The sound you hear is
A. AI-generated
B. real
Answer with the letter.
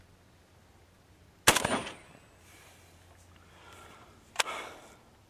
B